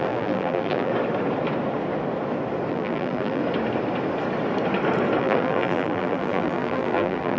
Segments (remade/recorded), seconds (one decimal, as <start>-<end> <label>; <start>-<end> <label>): 0.0-0.9 remade; 0.9-2.7 recorded; 2.7-3.4 remade; 3.4-5.2 recorded; 5.2-7.4 remade